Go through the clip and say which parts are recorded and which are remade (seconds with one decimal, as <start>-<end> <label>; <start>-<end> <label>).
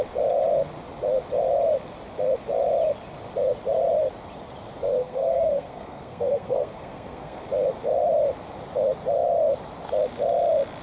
0.0-5.0 recorded; 5.0-7.4 remade; 7.4-10.8 recorded